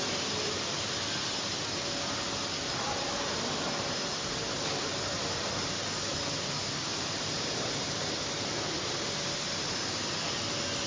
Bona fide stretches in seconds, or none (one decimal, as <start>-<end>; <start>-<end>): 0.0-6.9; 8.2-10.9